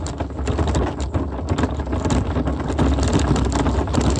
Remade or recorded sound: recorded